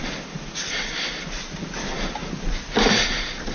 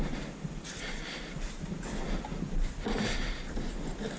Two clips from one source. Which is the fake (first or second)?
second